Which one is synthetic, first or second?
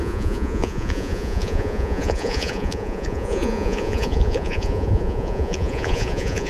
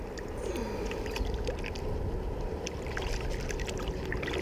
first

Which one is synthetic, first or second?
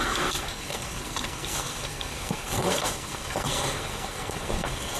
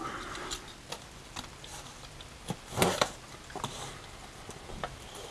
first